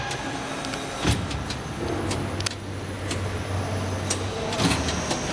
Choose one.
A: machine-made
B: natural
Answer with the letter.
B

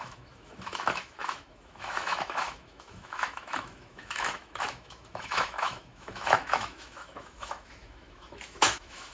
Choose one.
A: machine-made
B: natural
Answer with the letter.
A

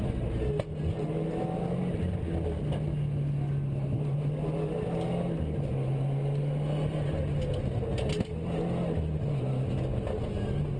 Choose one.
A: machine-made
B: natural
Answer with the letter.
B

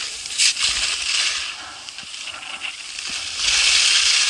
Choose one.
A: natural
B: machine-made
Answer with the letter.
A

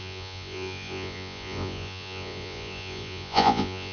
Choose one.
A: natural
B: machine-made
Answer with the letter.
B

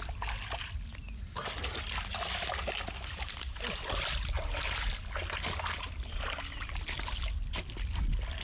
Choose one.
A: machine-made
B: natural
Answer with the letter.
B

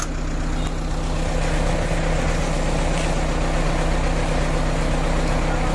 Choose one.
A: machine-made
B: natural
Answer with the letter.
B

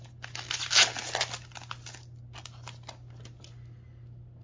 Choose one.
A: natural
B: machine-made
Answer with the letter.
A